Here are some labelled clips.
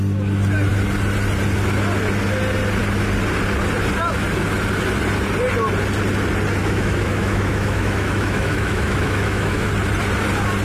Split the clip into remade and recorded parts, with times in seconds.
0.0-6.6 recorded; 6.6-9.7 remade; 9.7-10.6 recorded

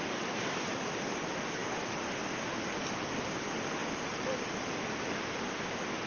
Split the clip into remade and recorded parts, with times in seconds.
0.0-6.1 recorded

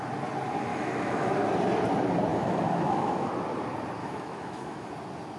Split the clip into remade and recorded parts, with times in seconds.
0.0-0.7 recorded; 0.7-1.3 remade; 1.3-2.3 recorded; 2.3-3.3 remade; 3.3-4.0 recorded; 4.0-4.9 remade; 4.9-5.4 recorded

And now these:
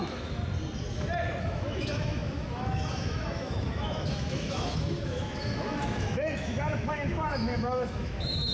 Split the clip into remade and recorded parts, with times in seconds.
0.0-0.4 remade; 0.4-1.4 recorded; 1.4-8.5 remade